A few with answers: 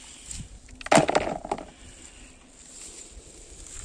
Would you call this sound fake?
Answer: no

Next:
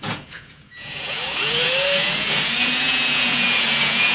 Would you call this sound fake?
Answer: yes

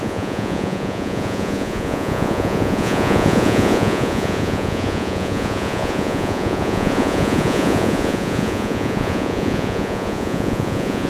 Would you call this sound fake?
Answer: yes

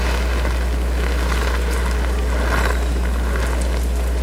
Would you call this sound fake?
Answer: no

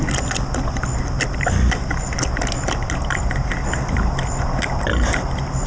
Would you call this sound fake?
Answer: no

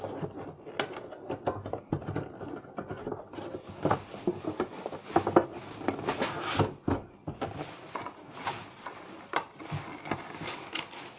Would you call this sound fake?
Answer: no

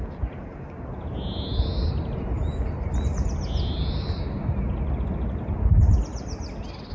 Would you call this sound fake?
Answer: no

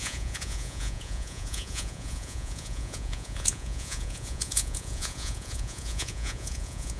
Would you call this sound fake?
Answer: yes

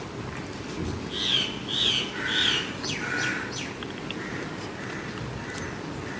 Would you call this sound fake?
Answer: no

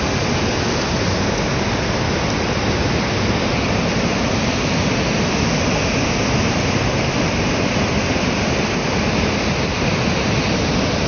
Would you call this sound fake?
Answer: no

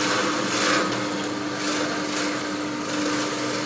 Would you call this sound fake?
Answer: no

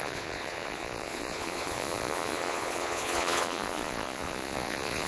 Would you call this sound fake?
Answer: yes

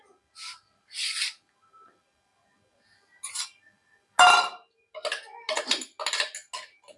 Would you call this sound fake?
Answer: no